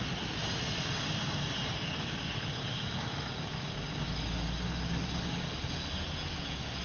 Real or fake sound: real